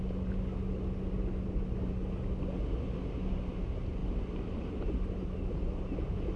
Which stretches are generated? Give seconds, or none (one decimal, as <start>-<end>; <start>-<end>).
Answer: none